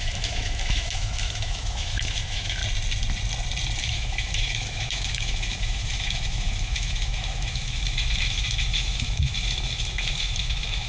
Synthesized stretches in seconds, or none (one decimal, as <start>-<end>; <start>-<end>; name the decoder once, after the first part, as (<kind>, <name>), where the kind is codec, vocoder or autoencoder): 0.0-2.6 (autoencoder, DAC-VAE); 3.8-10.9